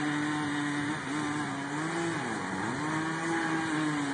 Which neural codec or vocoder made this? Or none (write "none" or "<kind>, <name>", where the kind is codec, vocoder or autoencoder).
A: none